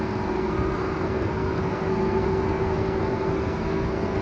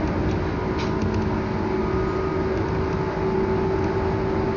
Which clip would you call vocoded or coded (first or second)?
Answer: first